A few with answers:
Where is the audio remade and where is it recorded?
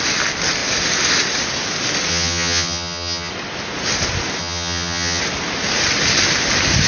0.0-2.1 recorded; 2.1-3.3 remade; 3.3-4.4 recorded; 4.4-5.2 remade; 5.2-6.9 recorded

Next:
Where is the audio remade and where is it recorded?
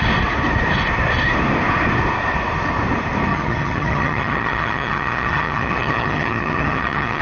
0.0-3.3 recorded; 3.3-7.2 remade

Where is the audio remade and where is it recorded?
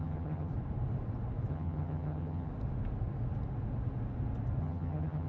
0.0-0.5 remade; 0.5-1.5 recorded; 1.5-2.5 remade; 2.5-4.6 recorded; 4.6-5.3 remade